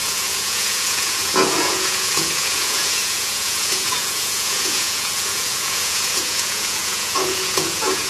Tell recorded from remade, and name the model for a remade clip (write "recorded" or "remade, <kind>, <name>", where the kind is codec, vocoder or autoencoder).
remade, vocoder, Vocos